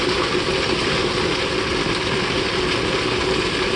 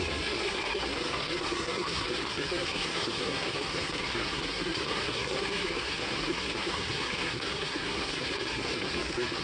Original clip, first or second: first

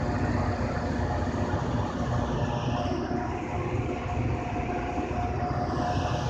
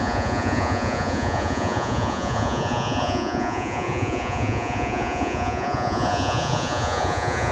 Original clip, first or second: first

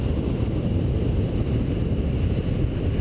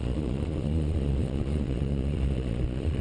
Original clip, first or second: first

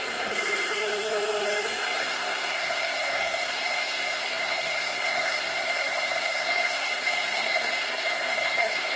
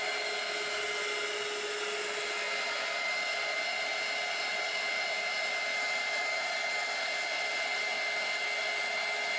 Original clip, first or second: second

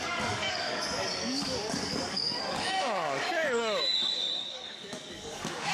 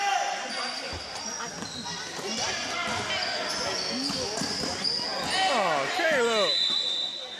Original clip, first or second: second